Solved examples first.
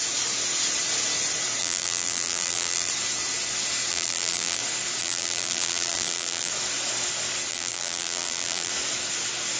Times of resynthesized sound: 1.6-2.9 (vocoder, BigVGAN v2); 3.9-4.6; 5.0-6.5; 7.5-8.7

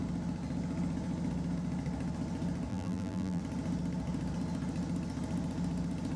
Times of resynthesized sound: 2.7-3.4 (vocoder, BigVGAN v2)

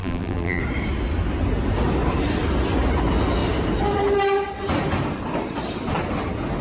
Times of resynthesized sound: 0.0-0.6 (vocoder, BigVGAN v2)

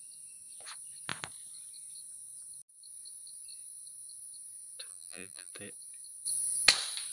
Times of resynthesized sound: 4.9-5.5 (vocoder, BigVGAN v2)

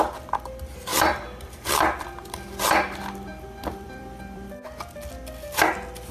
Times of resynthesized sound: 0.9-4.6 (vocoder, BigVGAN v2)

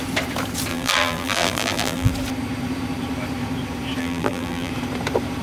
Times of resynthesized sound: 0.7-2.1 (vocoder, BigVGAN v2); 4.0-4.7

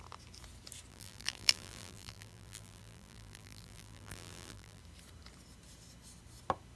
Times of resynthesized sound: 0.9-4.8 (vocoder, BigVGAN v2)